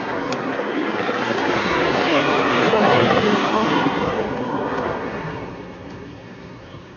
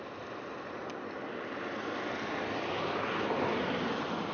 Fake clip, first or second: first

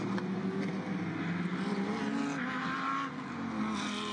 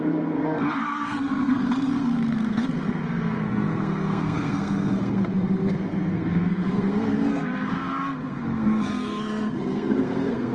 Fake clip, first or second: second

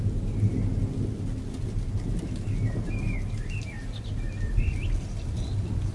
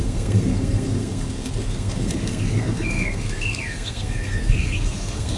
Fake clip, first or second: second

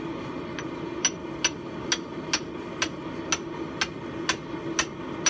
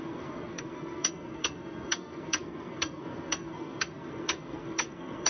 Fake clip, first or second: second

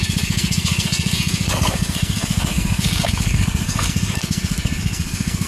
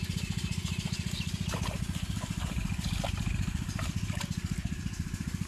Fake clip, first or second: first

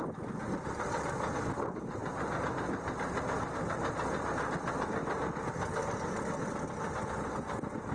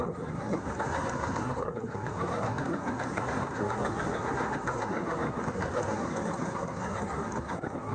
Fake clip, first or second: second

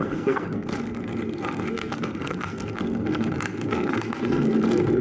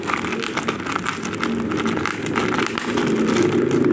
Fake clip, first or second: first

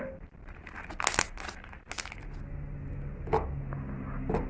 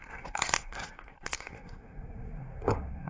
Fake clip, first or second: second